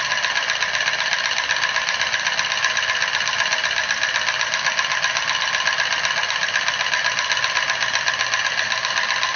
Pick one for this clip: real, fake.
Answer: real